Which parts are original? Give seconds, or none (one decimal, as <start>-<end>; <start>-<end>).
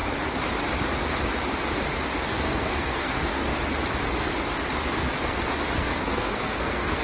0.0-2.3; 3.5-5.2